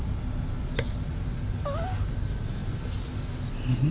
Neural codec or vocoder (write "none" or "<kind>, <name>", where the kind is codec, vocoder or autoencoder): none